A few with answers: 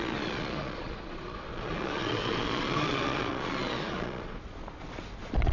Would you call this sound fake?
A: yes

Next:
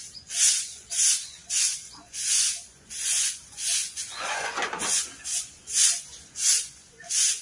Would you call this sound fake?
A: yes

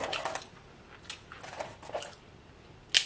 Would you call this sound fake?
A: no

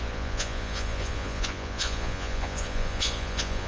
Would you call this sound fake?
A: yes